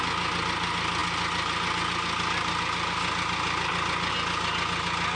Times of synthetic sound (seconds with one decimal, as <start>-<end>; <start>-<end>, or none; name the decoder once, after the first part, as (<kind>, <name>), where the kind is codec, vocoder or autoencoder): none